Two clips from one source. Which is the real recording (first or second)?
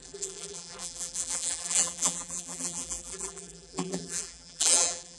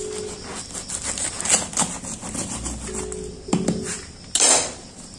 second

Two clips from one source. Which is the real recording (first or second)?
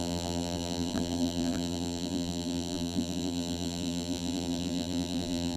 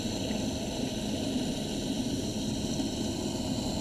second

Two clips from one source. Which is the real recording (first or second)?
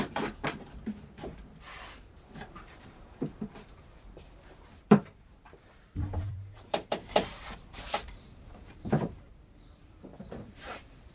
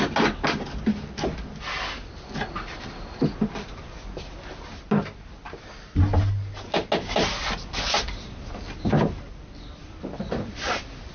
second